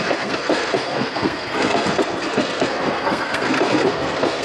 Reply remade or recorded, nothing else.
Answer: remade